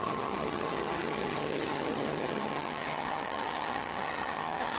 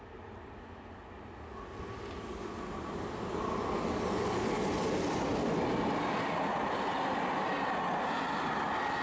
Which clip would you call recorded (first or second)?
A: second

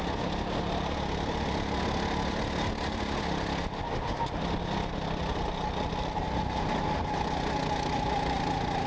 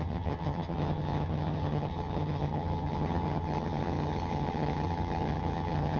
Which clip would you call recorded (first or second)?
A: first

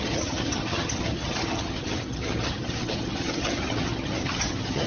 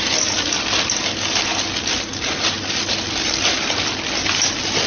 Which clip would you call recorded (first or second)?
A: second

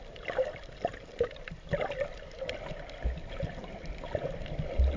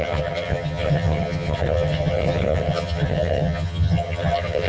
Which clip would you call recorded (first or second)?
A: first